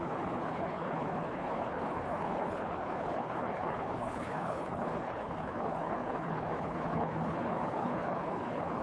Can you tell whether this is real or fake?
fake